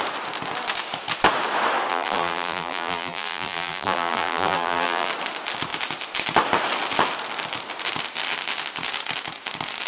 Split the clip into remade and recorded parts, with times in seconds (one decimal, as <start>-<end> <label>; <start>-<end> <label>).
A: 0.0-1.9 recorded; 1.9-5.1 remade; 5.1-9.9 recorded